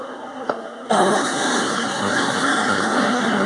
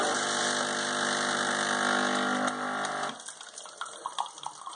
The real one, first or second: second